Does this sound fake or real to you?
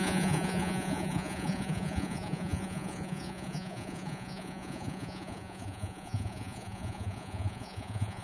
fake